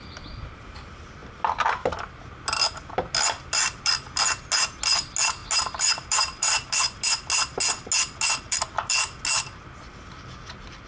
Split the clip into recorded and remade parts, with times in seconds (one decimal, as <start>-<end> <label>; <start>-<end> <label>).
0.0-10.9 recorded

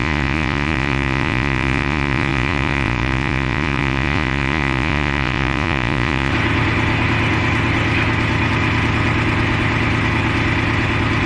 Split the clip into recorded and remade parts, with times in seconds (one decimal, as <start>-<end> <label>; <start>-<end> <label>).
0.0-6.3 remade; 6.3-11.3 recorded

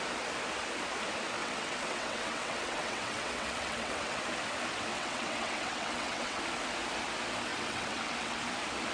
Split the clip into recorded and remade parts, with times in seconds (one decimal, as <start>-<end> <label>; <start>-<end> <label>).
0.0-1.4 recorded; 1.4-4.2 remade; 4.2-4.9 recorded; 4.9-6.4 remade; 6.4-7.5 recorded; 7.5-8.4 remade; 8.4-8.9 recorded

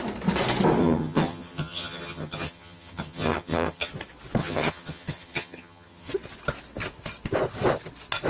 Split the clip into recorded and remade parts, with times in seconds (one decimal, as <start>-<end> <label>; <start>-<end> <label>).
0.0-0.8 recorded; 0.8-3.9 remade; 3.9-4.4 recorded; 4.4-6.1 remade; 6.1-8.3 recorded

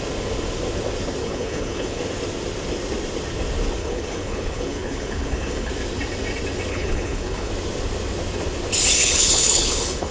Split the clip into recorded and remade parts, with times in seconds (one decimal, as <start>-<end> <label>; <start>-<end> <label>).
0.0-1.2 recorded; 1.2-2.0 remade; 2.0-3.8 recorded; 3.8-5.7 remade; 5.7-6.7 recorded; 6.7-7.5 remade; 7.5-9.0 recorded; 9.0-10.1 remade

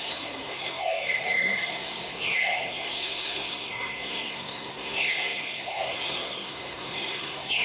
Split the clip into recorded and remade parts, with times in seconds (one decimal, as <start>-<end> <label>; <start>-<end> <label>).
0.0-7.6 remade

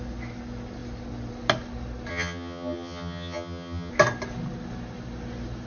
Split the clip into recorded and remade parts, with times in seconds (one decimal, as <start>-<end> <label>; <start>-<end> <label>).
0.0-2.1 recorded; 2.1-3.9 remade; 3.9-5.7 recorded

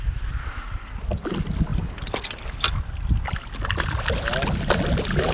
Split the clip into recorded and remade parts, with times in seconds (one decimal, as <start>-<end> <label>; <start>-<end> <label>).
0.0-5.3 recorded